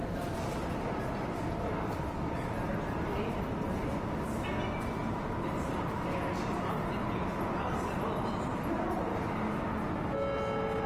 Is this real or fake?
real